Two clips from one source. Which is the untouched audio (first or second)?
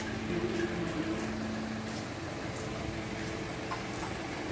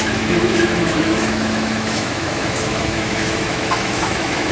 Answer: first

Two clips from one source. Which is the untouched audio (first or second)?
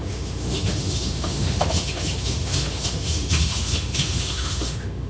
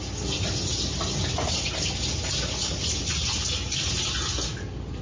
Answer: second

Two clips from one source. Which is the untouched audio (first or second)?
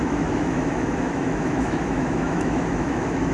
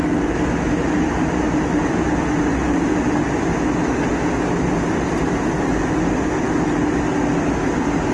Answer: second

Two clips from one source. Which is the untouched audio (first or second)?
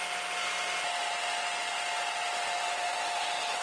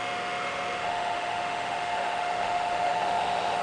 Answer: first